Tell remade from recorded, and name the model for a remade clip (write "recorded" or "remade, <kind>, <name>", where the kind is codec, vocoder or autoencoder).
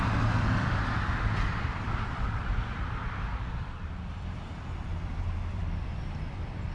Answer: remade, vocoder, BigVGAN v2